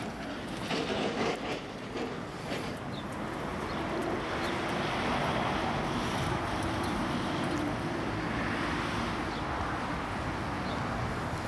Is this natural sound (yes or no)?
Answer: yes